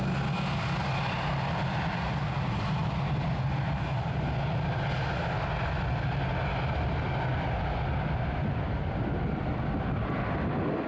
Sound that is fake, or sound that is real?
real